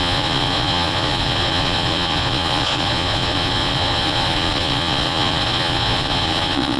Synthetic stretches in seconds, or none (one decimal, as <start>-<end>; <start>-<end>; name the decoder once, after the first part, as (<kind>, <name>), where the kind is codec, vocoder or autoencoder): 0.0-6.8 (vocoder, Vocos)